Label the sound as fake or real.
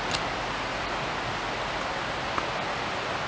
real